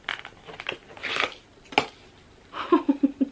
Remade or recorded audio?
recorded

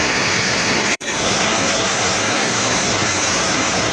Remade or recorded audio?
remade